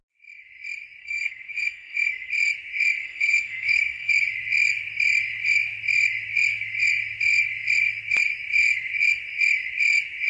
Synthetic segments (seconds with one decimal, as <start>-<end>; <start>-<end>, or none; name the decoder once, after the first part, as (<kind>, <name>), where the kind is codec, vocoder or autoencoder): 1.0-2.3 (codec, SNAC); 3.0-4.1